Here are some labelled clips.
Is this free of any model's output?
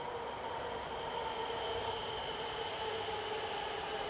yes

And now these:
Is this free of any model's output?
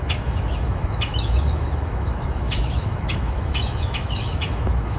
no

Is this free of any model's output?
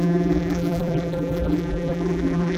no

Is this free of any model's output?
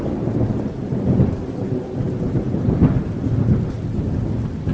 yes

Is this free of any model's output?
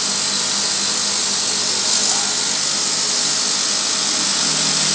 yes